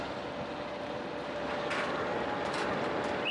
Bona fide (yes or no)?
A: yes